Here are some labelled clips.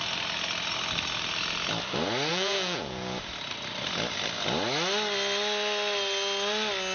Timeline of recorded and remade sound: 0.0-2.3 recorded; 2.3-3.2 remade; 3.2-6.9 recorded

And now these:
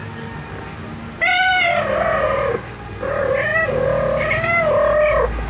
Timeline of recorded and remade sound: 0.0-1.5 remade; 1.5-5.5 recorded

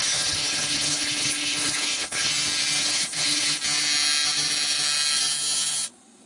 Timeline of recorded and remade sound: 0.0-2.3 remade; 2.3-2.8 recorded; 2.8-3.6 remade; 3.6-6.3 recorded

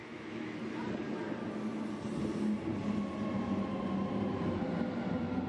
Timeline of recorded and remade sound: 0.0-0.6 remade; 0.6-5.5 recorded

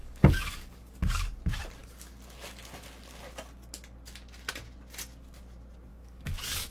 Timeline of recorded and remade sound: 0.0-1.4 remade; 1.4-5.9 recorded; 5.9-6.7 remade

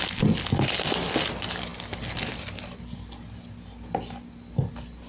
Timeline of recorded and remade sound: 0.0-5.1 recorded

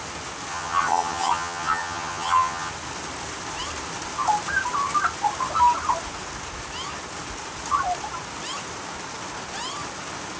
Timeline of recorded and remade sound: 0.0-0.5 recorded; 0.5-2.7 remade; 2.7-10.4 recorded

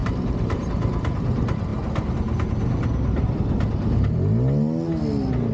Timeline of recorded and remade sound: 0.0-0.7 remade; 0.7-5.5 recorded